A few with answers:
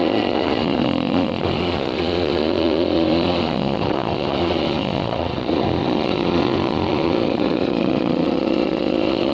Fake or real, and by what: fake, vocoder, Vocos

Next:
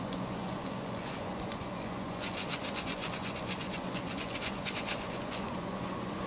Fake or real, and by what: fake, vocoder, Vocos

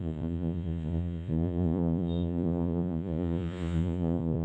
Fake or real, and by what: fake, vocoder, Vocos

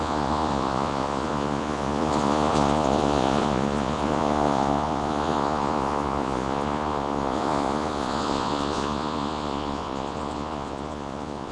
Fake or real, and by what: fake, vocoder, Vocos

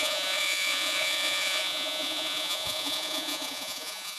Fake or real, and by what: fake, vocoder, Vocos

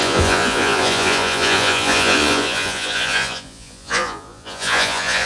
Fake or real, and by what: fake, vocoder, Vocos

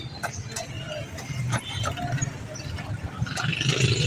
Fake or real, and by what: real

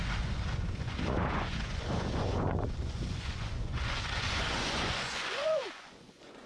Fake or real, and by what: fake, vocoder, Vocos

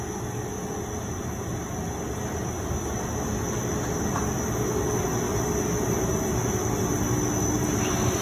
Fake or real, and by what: real